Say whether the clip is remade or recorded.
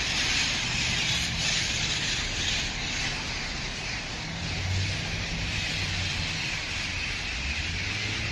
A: recorded